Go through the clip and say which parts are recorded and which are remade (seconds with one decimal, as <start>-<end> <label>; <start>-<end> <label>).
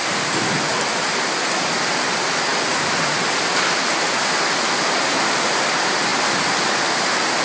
0.0-7.4 recorded